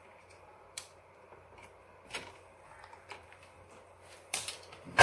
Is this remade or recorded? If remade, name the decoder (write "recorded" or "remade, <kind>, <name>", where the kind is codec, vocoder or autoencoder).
remade, vocoder, BigVGAN v2